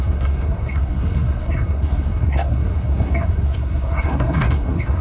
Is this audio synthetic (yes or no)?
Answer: yes